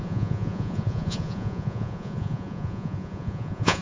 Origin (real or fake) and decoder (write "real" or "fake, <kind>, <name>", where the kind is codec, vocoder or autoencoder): fake, vocoder, Vocos